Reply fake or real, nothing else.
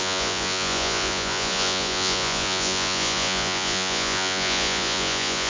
fake